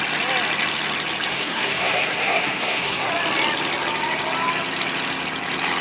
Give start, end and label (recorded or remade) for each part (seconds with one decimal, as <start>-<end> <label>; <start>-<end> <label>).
0.0-1.3 recorded; 1.3-3.1 remade; 3.1-5.8 recorded